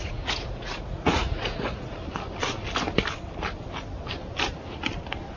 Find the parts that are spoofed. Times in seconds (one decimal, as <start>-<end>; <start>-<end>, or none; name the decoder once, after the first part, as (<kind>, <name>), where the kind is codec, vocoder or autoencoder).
0.0-2.0 (vocoder, Vocos)